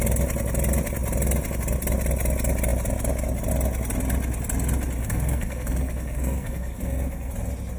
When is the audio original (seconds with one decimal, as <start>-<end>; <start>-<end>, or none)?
0.0-5.0; 7.3-7.8